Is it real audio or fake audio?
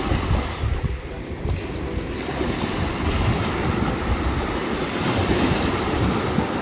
real